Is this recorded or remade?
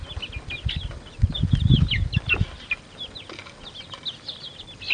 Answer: recorded